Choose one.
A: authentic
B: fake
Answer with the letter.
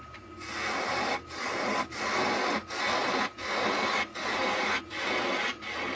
A